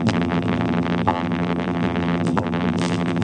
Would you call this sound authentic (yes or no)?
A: no